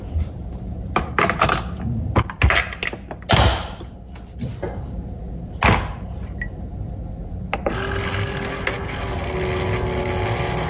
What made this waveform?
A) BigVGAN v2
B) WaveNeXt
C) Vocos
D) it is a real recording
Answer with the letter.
D